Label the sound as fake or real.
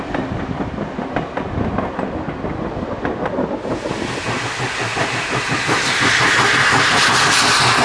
real